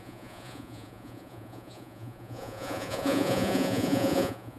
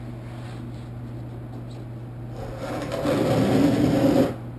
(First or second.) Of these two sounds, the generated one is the first